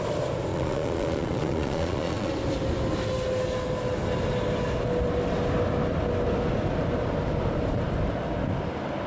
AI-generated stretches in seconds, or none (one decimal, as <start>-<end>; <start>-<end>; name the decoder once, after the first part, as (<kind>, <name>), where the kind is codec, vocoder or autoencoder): 0.5-2.3 (vocoder, Vocos)